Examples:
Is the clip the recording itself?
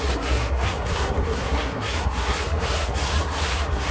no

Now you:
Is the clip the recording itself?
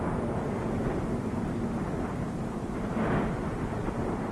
yes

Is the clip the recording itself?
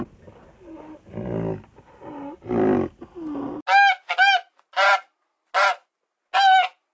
yes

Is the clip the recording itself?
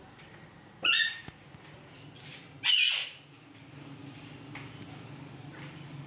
yes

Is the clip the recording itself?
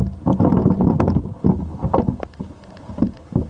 yes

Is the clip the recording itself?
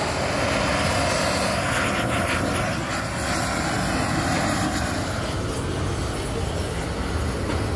yes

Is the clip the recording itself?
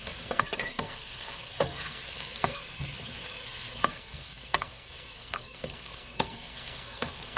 no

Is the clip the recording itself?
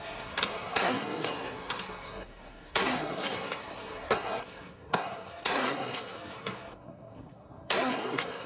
no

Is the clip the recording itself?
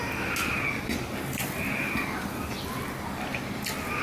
yes